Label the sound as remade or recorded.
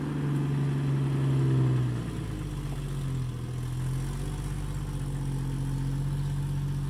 recorded